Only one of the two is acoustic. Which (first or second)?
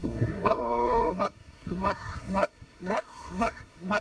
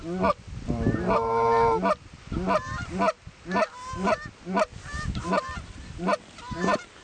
second